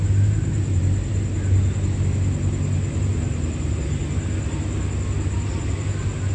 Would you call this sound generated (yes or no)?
no